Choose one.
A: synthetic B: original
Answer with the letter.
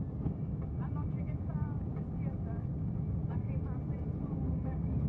B